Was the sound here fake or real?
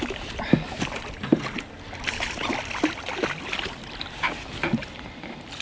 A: real